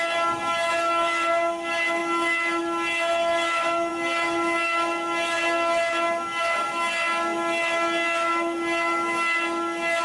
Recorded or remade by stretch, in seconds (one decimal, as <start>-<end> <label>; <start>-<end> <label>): 0.0-10.0 recorded